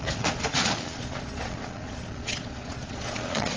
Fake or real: fake